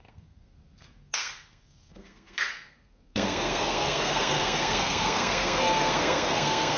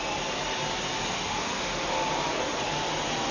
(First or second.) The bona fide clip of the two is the second